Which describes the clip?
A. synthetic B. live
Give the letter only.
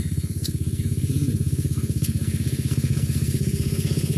A